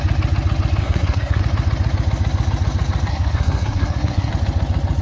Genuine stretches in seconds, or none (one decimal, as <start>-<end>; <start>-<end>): 0.0-0.8; 1.4-3.1; 4.3-5.0

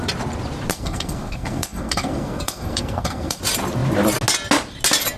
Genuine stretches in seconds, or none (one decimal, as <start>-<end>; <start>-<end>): 0.0-0.7; 3.4-5.2

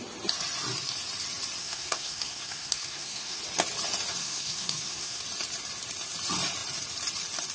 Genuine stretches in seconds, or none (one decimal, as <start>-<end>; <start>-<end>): 0.0-1.6; 3.4-4.2; 5.2-7.5

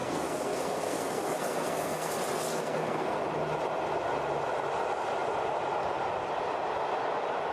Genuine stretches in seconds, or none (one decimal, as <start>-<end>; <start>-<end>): 2.1-2.5; 3.2-7.5

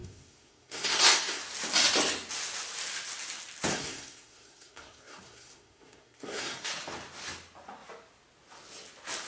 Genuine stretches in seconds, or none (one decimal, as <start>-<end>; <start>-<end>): 1.4-3.7; 6.7-9.3

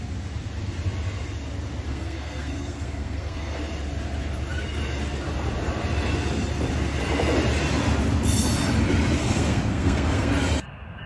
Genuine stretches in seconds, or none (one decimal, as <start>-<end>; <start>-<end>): 0.0-1.9; 3.6-9.2; 10.3-11.1

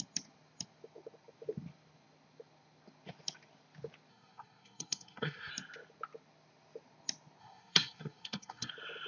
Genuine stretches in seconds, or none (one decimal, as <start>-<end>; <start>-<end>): 0.0-4.1; 5.5-7.4; 8.7-9.1